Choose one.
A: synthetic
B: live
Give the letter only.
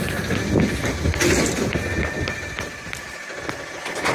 B